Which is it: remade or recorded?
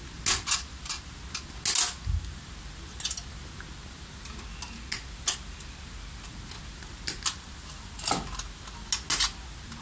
recorded